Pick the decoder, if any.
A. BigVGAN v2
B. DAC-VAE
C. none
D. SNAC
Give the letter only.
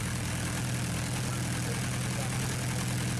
C